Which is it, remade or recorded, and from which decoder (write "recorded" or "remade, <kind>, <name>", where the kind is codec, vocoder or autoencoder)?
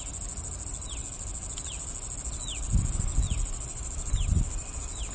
recorded